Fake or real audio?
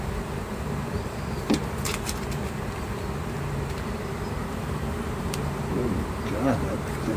fake